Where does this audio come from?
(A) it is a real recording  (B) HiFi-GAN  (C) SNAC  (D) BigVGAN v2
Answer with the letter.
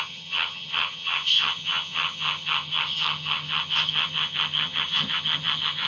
B